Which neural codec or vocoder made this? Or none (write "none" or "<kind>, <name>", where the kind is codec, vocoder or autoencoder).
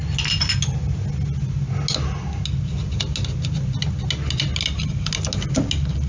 none